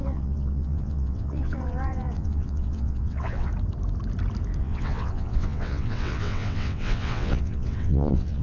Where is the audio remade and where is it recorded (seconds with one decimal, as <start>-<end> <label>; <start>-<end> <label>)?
0.0-3.5 remade; 3.5-4.6 recorded; 4.6-8.4 remade